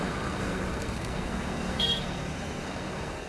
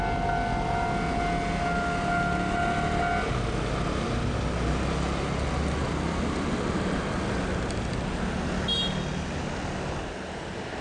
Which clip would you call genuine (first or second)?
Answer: second